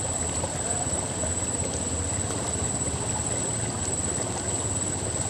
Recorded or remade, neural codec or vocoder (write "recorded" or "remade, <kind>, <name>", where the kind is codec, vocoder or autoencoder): recorded